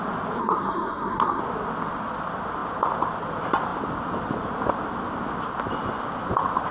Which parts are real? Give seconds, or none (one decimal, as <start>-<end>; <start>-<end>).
0.0-0.4; 1.4-6.7

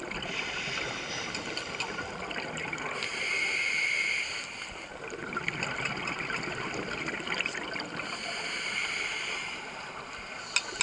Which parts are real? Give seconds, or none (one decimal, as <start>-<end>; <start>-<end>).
0.0-10.8

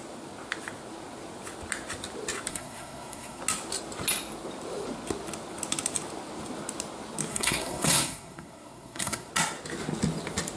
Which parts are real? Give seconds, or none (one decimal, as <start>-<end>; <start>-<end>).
0.0-2.5; 3.4-7.3; 9.3-10.6

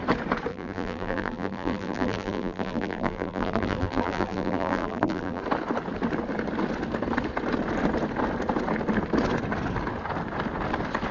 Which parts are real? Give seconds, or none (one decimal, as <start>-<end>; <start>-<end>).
0.0-0.5; 5.4-11.1

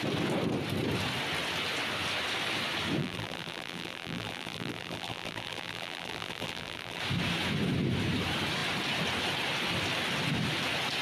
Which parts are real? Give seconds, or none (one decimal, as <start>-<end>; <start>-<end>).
0.0-3.0; 7.0-11.0

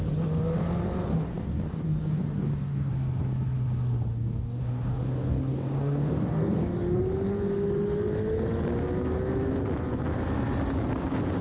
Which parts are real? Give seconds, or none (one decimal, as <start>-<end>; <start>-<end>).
0.0-1.1; 2.9-4.1; 7.0-11.4

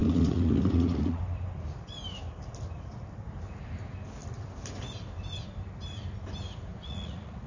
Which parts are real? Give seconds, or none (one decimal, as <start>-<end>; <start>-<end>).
1.2-6.8